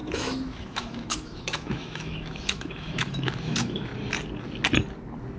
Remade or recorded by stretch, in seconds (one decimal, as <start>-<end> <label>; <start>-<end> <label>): 0.0-3.9 remade; 3.9-5.4 recorded

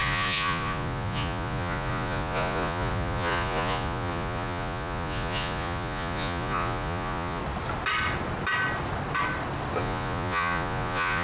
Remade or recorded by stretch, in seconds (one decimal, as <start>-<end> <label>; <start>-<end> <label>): 0.0-7.4 remade; 7.4-9.8 recorded; 9.8-11.2 remade

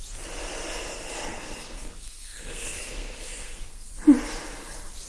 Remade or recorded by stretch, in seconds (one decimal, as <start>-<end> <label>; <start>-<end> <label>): 0.0-1.2 recorded; 1.2-3.9 remade; 3.9-5.1 recorded